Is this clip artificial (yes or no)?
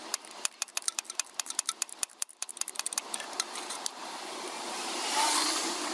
yes